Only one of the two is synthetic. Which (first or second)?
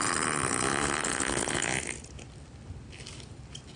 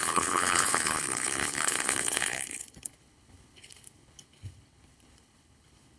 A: second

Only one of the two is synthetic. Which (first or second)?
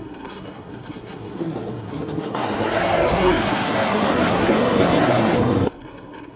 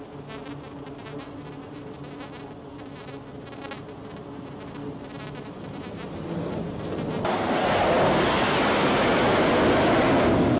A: first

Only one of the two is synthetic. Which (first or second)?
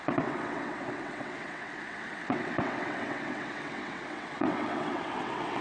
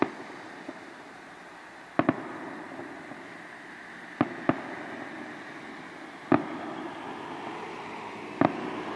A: first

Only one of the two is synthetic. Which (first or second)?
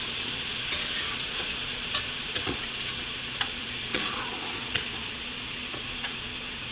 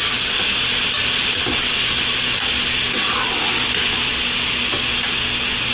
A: first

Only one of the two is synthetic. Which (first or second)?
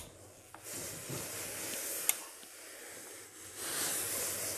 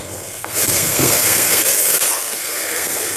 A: second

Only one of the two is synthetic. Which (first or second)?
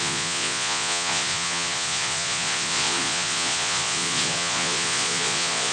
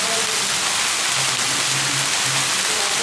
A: first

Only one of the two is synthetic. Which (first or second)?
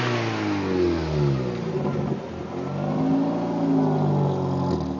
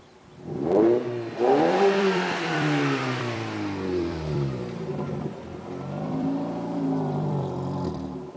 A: second